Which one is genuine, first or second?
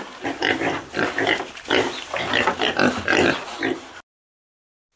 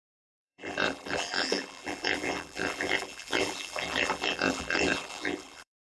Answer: first